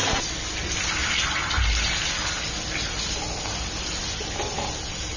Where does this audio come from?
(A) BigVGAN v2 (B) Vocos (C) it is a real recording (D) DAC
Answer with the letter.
C